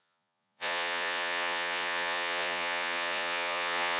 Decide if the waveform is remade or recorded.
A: remade